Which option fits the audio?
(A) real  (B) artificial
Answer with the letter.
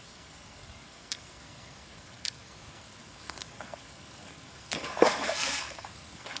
B